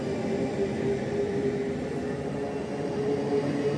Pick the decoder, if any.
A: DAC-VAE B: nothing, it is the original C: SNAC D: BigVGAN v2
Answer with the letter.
B